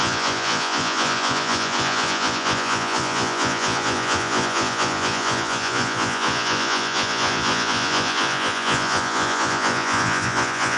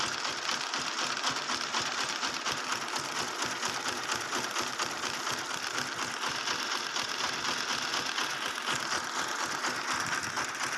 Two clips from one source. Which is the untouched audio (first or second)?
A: second